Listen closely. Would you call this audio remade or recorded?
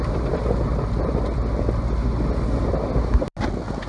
recorded